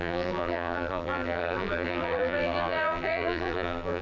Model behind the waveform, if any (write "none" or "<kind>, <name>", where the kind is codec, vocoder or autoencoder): vocoder, BigVGAN v2